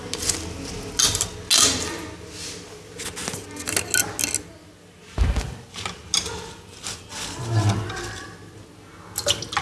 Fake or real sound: real